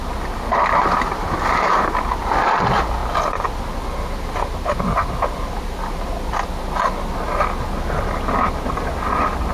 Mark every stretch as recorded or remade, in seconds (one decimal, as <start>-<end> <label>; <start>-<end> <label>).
0.0-9.5 recorded